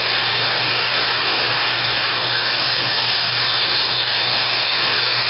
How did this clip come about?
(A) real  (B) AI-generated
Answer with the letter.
B